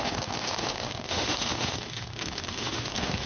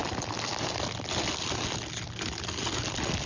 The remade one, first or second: first